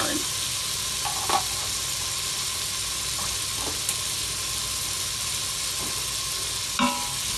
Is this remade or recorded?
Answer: recorded